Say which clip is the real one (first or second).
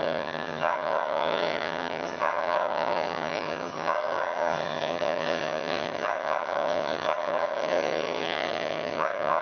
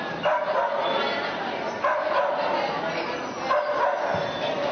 second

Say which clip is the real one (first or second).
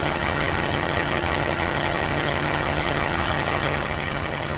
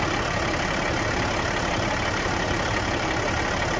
second